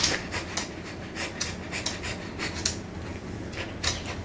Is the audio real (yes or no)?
yes